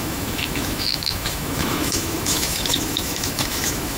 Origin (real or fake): fake